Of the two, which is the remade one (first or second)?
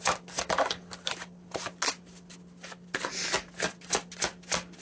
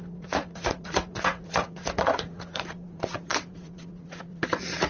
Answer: second